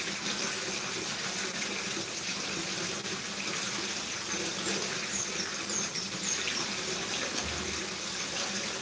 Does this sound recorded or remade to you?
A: recorded